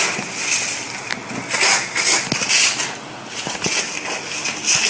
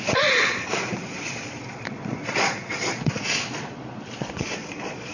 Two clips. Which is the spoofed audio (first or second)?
second